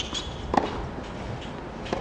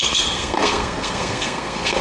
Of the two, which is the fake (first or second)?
second